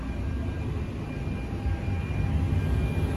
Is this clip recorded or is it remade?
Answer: recorded